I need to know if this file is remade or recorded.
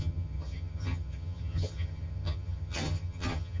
remade